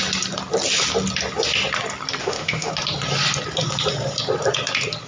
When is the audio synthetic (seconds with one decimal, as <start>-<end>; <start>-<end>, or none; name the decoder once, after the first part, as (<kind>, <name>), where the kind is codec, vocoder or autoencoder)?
2.2-2.7 (autoencoder, DAC-VAE)